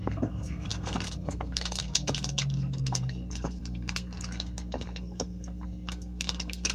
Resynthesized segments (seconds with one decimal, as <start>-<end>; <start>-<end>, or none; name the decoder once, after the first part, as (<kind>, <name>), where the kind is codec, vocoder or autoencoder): 0.0-6.7 (codec, SNAC)